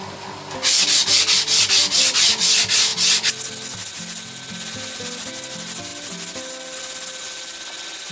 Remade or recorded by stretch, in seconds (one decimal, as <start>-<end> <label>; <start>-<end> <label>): 0.0-8.1 recorded